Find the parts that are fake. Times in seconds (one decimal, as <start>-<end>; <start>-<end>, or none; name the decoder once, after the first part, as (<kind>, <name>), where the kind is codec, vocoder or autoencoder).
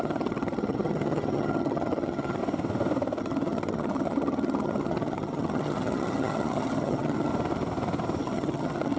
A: 0.0-2.4 (vocoder, HiFi-GAN); 3.2-7.3; 8.2-9.0